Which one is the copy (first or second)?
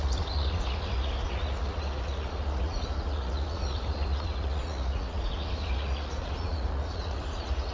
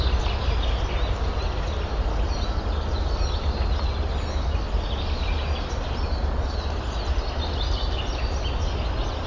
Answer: first